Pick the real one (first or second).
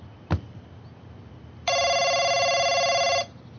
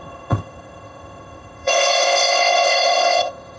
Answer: first